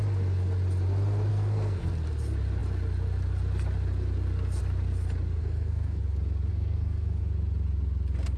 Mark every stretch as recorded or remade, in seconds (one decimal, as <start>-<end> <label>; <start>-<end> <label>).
0.0-1.3 recorded; 1.3-1.9 remade; 1.9-5.4 recorded; 5.4-6.0 remade; 6.0-6.5 recorded; 6.5-7.2 remade; 7.2-8.4 recorded